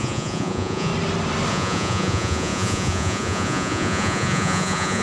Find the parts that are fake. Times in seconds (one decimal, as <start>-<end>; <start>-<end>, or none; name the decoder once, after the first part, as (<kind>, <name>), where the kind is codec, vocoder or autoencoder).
0.0-0.9 (vocoder, Vocos); 1.5-5.0